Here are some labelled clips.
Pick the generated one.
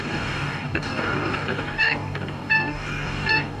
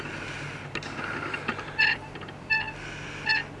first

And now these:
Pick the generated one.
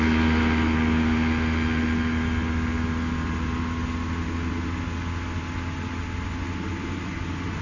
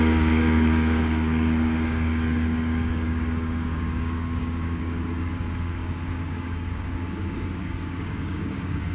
second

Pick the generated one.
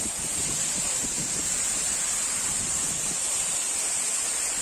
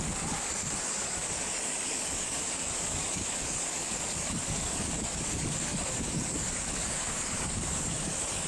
second